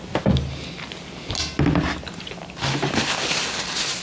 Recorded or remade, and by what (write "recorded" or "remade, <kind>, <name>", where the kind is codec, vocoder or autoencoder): recorded